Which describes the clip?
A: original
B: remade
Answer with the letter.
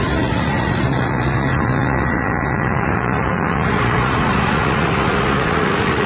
B